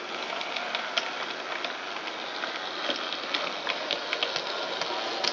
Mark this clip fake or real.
real